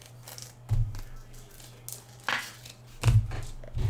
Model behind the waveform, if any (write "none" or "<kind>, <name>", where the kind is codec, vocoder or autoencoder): none